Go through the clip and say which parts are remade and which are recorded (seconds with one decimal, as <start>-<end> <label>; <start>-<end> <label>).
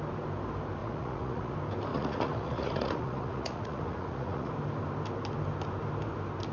0.0-0.8 recorded; 0.8-1.5 remade; 1.5-1.9 recorded; 1.9-4.5 remade; 4.5-6.5 recorded